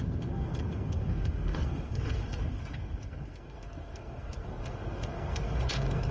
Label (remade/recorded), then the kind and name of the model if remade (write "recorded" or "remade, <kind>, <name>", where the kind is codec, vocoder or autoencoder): remade, codec, SNAC